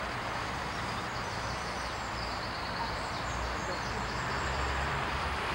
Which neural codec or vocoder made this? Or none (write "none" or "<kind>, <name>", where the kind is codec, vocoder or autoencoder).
vocoder, BigVGAN v2